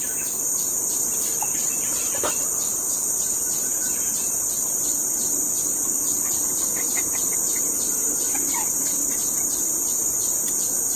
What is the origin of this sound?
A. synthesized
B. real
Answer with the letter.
B